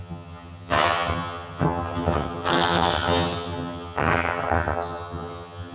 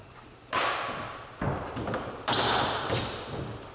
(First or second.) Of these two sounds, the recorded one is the second